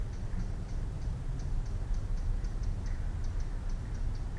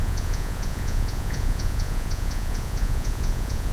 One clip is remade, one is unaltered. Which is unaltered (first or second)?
first